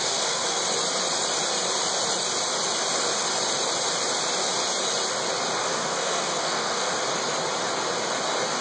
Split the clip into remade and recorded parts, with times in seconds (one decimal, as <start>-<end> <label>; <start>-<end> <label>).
0.0-0.6 remade; 0.6-5.6 recorded; 5.6-6.9 remade; 6.9-8.6 recorded